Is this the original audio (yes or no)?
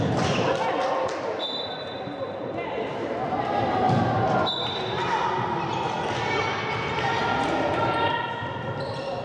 yes